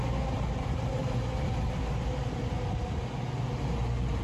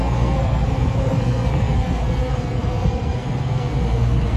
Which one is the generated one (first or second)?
second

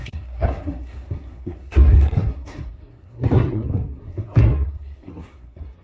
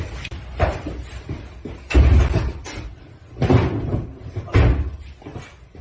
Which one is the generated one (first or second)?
first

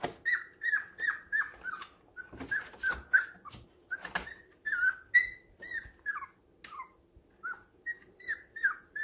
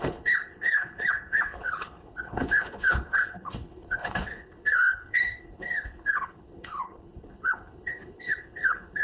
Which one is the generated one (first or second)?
second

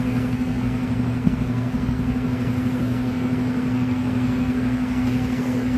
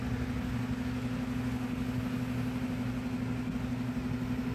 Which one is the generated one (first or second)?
first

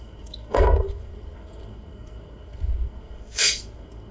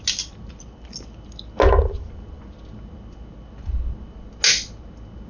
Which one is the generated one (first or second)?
first